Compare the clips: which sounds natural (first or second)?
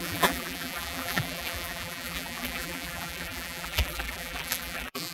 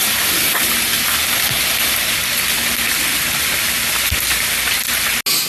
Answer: second